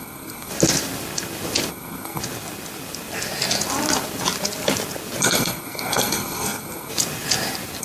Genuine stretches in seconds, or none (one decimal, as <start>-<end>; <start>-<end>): 0.5-1.7; 2.2-5.2; 6.9-7.8